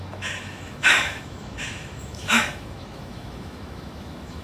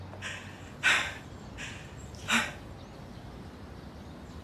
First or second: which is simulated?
first